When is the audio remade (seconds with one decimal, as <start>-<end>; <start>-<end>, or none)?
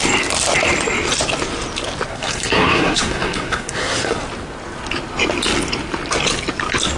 2.1-4.2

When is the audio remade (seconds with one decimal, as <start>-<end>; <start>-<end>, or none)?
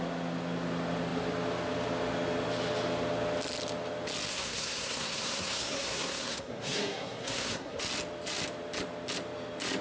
4.3-7.8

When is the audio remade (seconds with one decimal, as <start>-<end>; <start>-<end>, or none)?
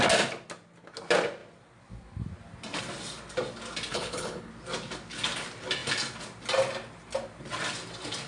3.9-4.5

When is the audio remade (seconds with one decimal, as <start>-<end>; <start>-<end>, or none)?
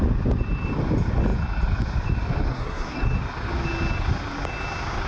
2.5-3.0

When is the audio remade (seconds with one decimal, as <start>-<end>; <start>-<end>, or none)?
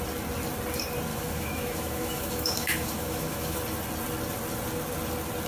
1.1-3.6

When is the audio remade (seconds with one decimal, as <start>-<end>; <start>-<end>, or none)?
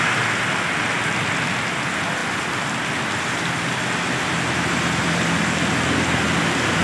none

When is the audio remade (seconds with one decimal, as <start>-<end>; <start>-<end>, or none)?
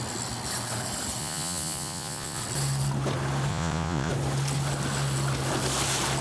1.2-2.4; 3.5-4.1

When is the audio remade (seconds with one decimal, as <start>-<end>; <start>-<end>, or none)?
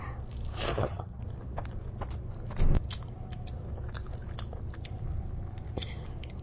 0.7-1.2